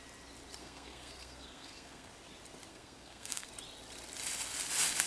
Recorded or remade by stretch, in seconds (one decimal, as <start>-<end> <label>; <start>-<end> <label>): 0.0-0.6 recorded; 0.6-2.1 remade; 2.1-2.7 recorded; 2.7-3.5 remade; 3.5-5.1 recorded